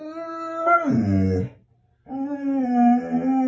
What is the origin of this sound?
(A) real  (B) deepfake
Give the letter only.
A